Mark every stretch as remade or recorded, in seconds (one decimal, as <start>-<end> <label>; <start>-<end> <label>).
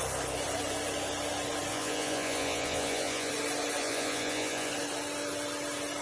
0.0-1.7 recorded; 1.7-3.3 remade; 3.3-3.8 recorded; 3.8-4.7 remade; 4.7-6.0 recorded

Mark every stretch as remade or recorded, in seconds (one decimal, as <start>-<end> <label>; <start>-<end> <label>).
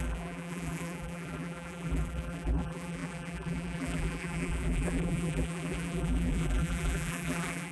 0.0-7.7 remade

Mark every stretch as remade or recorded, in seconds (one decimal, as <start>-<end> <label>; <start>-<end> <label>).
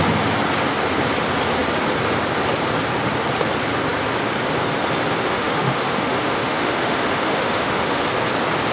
0.0-5.3 recorded; 5.3-8.0 remade; 8.0-8.7 recorded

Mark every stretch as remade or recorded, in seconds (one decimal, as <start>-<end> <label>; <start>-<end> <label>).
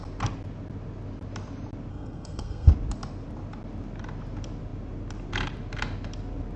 0.0-1.9 recorded; 1.9-2.7 remade; 2.7-6.6 recorded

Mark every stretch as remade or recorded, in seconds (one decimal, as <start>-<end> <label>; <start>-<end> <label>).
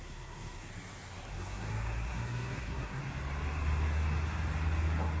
0.0-0.7 remade; 0.7-1.3 recorded; 1.3-3.0 remade; 3.0-5.2 recorded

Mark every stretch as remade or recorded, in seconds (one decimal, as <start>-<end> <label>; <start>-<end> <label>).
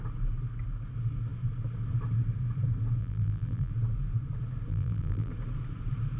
0.0-3.0 recorded; 3.0-3.7 remade; 3.7-4.7 recorded; 4.7-5.3 remade; 5.3-6.2 recorded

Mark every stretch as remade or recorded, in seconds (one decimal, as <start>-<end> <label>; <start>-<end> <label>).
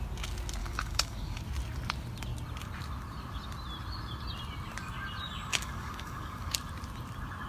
0.0-0.6 recorded; 0.6-1.4 remade; 1.4-5.5 recorded; 5.5-6.5 remade; 6.5-7.5 recorded